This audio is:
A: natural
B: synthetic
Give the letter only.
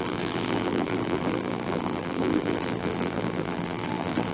B